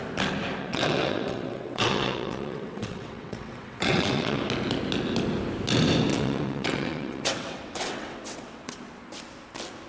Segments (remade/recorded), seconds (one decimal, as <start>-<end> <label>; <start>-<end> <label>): 0.0-0.6 recorded; 0.6-4.4 remade; 4.4-6.1 recorded; 6.1-8.7 remade; 8.7-9.9 recorded